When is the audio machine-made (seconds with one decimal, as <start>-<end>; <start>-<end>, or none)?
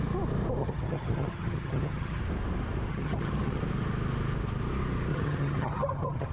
0.6-2.2; 2.9-3.6; 5.1-6.3